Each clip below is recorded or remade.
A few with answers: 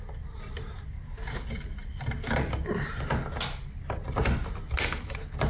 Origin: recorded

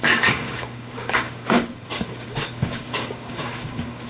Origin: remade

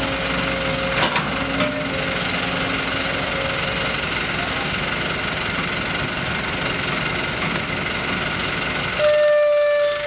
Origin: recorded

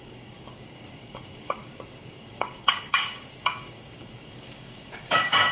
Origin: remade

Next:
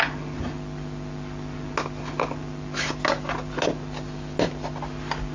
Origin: recorded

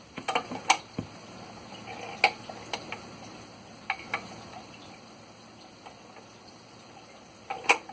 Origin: recorded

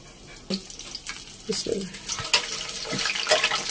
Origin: recorded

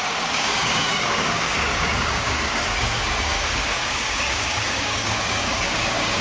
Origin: remade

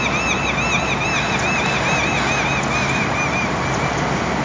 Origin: recorded